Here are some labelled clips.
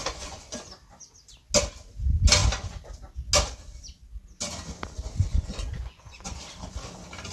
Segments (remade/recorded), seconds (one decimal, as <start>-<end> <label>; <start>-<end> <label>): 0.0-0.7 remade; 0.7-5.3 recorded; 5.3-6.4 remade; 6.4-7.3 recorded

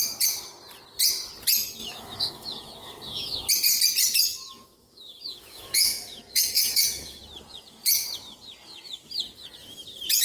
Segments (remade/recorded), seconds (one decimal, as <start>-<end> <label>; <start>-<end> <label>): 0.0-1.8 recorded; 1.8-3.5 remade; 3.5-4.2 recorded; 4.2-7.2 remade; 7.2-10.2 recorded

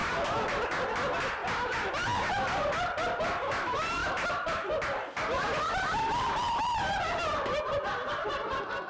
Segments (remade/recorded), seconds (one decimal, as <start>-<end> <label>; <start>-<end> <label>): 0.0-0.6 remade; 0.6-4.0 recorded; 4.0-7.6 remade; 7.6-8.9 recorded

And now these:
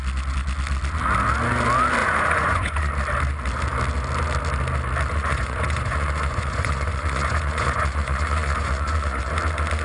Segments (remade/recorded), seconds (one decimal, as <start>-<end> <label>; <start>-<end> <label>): 0.0-2.0 recorded; 2.0-2.9 remade; 2.9-5.1 recorded; 5.1-9.3 remade; 9.3-9.8 recorded

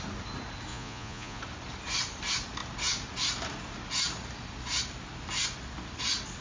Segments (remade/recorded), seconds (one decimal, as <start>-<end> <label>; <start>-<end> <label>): 0.0-0.7 recorded; 0.7-1.4 remade; 1.4-6.4 recorded

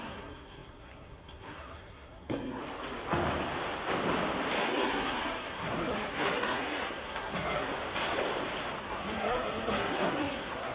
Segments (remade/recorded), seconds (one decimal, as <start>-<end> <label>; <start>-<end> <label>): 0.0-2.6 remade; 2.6-4.6 recorded; 4.6-7.7 remade; 7.7-8.8 recorded; 8.8-10.7 remade

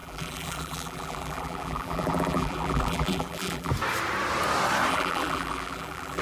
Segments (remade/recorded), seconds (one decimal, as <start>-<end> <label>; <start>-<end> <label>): 0.0-3.7 remade; 3.7-4.9 recorded; 4.9-6.2 remade